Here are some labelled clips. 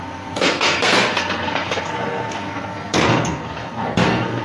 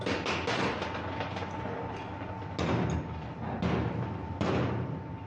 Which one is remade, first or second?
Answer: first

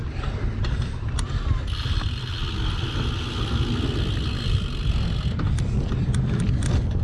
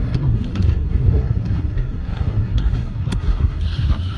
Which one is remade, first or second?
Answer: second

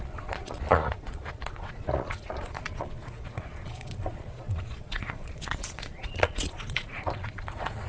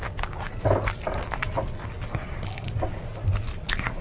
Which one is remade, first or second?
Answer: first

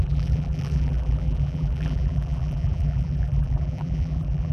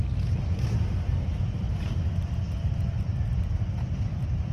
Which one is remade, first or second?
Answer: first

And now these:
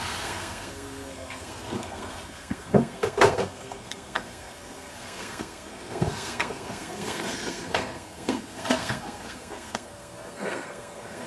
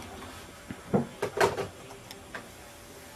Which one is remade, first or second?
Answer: first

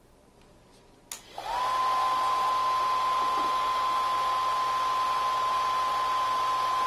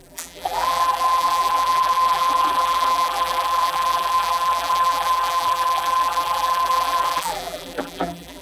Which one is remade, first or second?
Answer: second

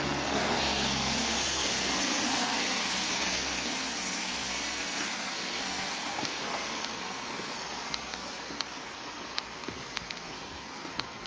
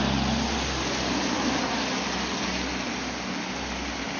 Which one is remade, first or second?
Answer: first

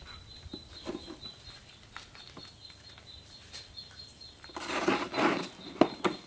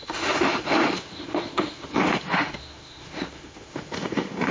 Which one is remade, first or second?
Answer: second